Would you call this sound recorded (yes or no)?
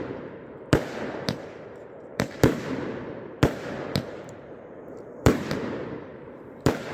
no